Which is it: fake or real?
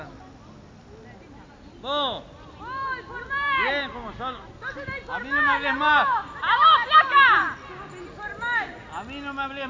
real